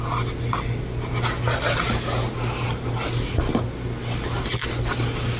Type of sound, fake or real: real